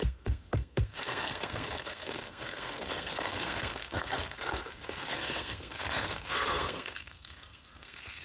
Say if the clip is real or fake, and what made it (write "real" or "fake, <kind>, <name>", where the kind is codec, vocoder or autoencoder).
fake, codec, SNAC